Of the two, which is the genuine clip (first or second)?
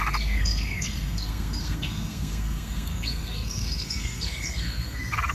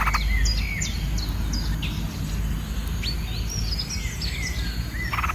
second